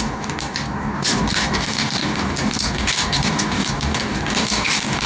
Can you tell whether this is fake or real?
fake